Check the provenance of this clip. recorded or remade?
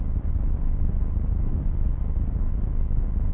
recorded